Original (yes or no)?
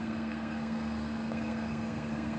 no